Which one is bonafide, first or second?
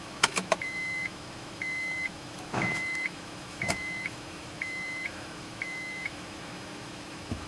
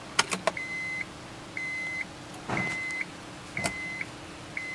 second